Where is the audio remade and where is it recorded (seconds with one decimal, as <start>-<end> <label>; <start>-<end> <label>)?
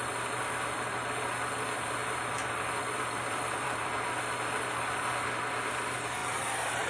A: 0.0-2.0 recorded; 2.0-4.0 remade; 4.0-6.2 recorded; 6.2-6.9 remade